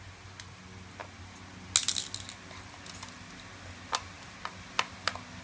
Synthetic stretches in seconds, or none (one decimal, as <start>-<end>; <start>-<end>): none